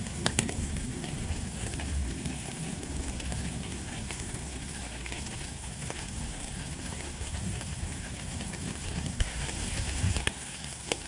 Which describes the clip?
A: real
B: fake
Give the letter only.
B